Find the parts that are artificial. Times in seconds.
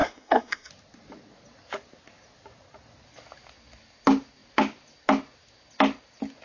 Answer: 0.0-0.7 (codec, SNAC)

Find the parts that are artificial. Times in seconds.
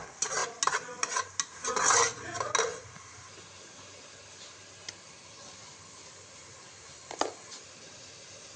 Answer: none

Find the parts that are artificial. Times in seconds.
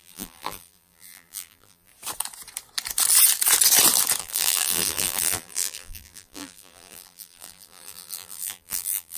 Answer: 0.0-1.9 (vocoder, BigVGAN v2); 4.2-9.2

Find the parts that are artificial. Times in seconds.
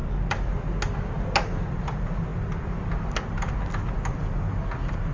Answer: none